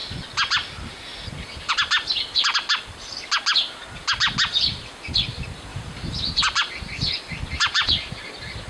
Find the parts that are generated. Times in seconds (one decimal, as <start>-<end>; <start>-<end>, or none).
5.7-6.4